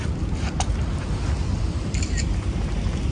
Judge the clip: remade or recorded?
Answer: recorded